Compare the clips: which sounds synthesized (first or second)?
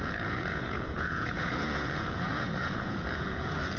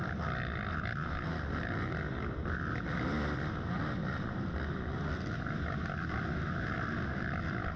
first